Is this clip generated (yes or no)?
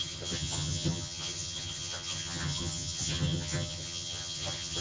yes